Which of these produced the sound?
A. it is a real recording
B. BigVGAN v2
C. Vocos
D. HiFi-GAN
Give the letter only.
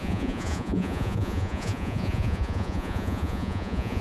C